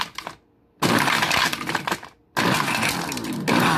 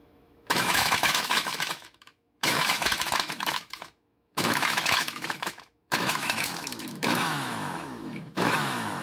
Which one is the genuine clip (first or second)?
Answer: first